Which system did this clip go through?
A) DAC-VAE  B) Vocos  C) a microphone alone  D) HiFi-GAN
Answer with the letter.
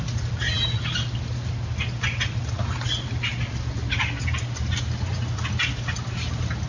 C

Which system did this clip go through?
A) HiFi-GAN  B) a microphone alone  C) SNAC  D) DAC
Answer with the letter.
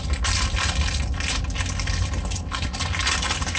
B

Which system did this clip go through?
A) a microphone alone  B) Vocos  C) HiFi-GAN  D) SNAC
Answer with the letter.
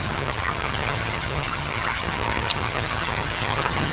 C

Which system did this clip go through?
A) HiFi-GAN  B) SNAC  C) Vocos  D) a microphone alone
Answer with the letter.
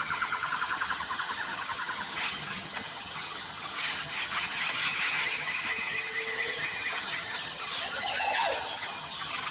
A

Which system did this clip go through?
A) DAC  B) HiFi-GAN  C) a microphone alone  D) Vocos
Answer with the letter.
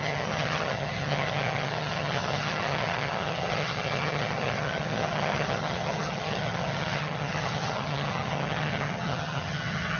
B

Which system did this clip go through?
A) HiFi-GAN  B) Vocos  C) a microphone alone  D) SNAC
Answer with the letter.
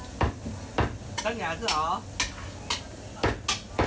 C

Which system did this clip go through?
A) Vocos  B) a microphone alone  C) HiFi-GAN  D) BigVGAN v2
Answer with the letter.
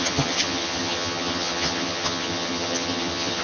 C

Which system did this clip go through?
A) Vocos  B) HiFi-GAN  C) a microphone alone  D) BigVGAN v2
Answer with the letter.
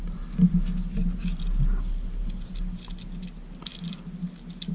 C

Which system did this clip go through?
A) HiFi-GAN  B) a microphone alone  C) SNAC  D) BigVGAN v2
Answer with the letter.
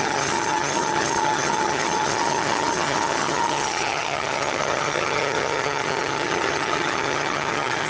A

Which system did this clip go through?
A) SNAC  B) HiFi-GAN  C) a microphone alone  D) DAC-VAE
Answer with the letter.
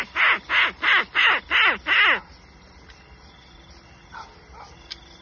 C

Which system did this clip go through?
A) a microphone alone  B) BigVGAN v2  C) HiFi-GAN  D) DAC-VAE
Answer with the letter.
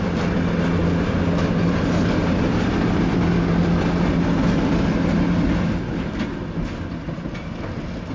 A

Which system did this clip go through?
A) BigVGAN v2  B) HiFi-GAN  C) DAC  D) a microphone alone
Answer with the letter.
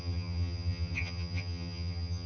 B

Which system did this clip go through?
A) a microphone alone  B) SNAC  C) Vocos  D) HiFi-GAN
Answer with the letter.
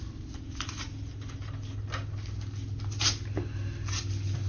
A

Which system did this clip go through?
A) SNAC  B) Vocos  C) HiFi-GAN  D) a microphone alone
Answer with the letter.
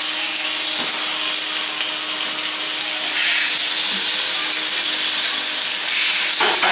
D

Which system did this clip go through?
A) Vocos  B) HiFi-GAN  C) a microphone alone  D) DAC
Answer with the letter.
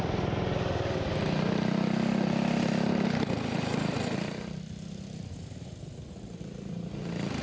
C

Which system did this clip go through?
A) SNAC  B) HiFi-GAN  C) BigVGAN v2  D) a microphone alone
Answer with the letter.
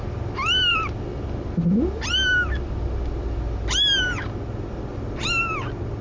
D